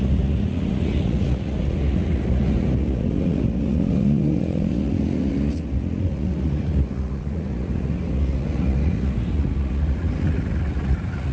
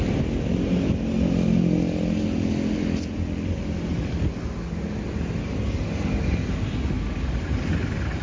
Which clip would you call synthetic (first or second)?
first